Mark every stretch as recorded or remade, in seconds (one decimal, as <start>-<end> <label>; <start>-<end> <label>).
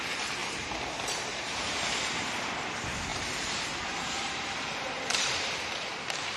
0.0-0.4 recorded; 0.4-0.9 remade; 0.9-1.3 recorded; 1.3-2.5 remade; 2.5-3.1 recorded; 3.1-5.9 remade; 5.9-6.4 recorded